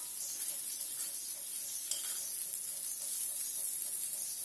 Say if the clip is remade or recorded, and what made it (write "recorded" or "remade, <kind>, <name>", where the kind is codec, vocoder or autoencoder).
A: recorded